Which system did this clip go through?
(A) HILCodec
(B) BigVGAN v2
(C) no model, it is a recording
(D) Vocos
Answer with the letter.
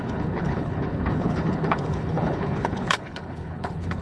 A